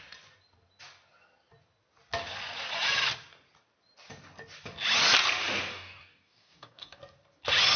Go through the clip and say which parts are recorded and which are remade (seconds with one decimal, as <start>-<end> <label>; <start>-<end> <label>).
0.0-5.7 recorded; 5.7-7.0 remade; 7.0-7.8 recorded